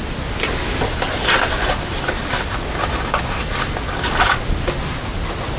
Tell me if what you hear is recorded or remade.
recorded